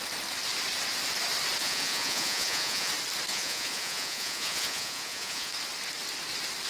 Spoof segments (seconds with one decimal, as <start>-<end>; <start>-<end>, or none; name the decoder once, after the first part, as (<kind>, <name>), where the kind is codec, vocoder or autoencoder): 1.6-2.9 (vocoder, Vocos); 3.3-5.5